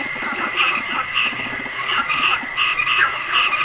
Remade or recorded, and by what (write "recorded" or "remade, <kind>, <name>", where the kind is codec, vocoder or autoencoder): remade, vocoder, Vocos